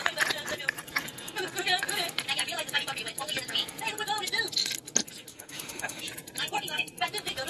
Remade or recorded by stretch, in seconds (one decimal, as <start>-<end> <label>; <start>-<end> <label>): 0.0-5.3 recorded; 5.3-6.0 remade; 6.0-7.5 recorded

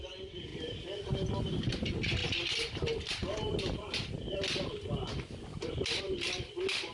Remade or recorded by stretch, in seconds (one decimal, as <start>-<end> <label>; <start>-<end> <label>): 0.0-6.9 recorded

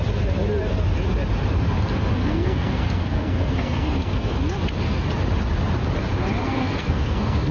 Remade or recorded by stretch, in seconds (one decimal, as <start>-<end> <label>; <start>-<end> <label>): 0.0-2.2 recorded; 2.2-4.3 remade; 4.3-6.4 recorded; 6.4-7.5 remade

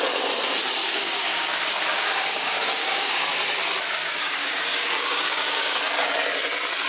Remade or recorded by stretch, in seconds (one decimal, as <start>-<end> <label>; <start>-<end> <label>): 0.0-0.8 recorded; 0.8-1.5 remade; 1.5-1.9 recorded; 1.9-3.3 remade; 3.3-4.0 recorded; 4.0-5.8 remade; 5.8-6.9 recorded

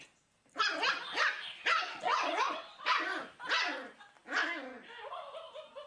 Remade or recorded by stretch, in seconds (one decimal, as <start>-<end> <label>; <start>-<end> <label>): 0.0-1.7 recorded; 1.7-3.0 remade; 3.0-5.9 recorded

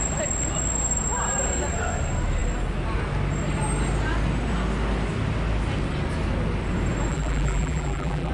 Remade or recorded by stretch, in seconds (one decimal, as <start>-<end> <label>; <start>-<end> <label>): 0.0-7.1 recorded; 7.1-8.3 remade

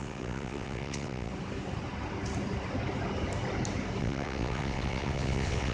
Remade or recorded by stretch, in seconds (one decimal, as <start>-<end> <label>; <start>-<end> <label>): 0.0-1.3 remade; 1.3-4.0 recorded; 4.0-5.7 remade